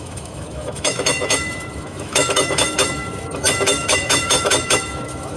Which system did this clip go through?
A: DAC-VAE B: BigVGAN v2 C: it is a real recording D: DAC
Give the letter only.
A